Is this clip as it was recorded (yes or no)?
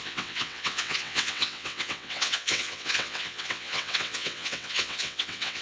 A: no